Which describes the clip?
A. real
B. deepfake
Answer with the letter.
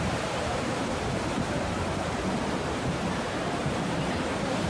B